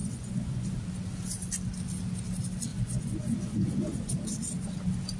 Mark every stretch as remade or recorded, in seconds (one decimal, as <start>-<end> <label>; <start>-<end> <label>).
0.0-0.7 remade; 0.7-2.7 recorded; 2.7-4.0 remade; 4.0-5.2 recorded